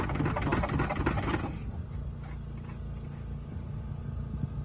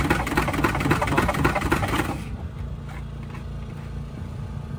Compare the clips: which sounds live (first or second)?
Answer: first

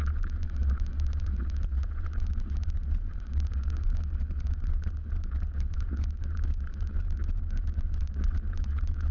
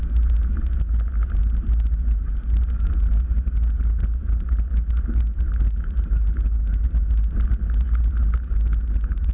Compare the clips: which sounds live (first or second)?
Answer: second